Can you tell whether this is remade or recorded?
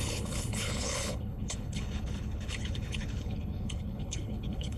remade